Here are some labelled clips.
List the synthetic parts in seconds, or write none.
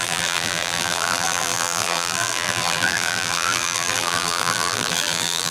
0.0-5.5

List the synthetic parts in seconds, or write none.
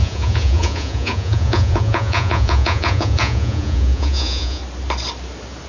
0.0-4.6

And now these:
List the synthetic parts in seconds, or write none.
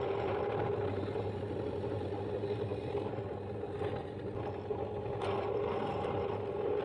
none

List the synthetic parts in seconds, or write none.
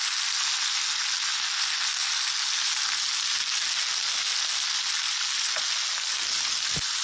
none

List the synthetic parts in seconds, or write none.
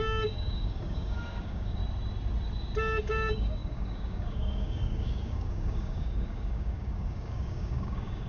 0.0-1.8; 3.0-8.3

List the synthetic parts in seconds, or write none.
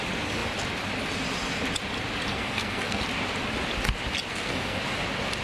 2.3-3.0; 4.3-4.8